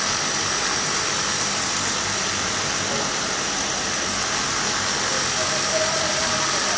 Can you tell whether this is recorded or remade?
recorded